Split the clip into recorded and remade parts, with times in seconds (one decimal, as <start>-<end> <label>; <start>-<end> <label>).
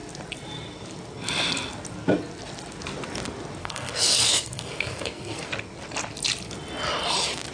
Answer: 0.0-3.6 recorded; 3.6-5.5 remade; 5.5-7.5 recorded